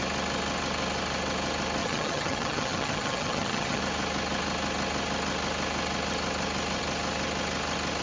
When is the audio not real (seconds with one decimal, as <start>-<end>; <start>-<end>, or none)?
1.8-3.8

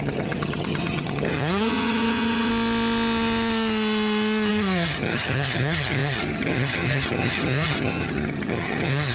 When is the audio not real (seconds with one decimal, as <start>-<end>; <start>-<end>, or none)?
0.0-2.5; 4.5-9.1

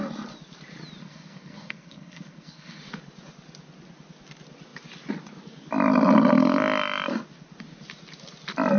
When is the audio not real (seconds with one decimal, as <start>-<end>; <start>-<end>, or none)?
1.0-2.8

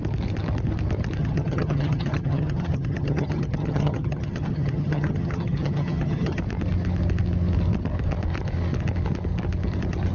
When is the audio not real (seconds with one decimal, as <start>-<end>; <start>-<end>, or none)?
1.2-6.4